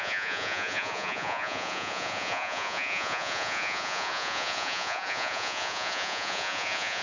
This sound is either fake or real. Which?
fake